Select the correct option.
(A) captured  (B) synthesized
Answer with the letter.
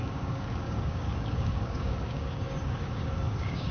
B